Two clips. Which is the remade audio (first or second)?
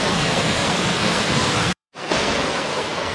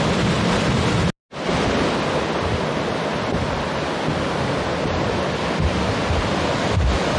first